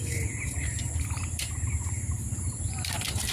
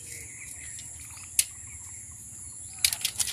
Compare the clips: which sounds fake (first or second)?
first